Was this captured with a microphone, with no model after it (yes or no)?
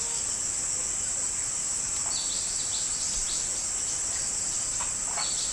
yes